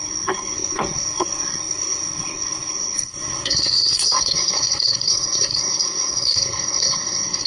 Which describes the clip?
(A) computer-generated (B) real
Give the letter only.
A